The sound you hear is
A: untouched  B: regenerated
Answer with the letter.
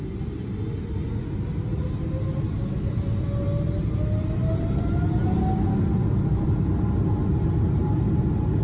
A